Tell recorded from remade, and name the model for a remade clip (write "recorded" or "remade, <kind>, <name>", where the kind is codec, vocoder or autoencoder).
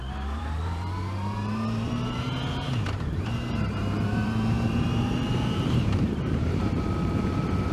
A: remade, vocoder, BigVGAN v2